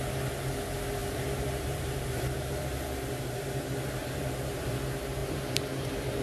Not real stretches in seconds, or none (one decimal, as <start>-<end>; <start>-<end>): 1.0-3.6; 4.0-4.7; 5.2-6.2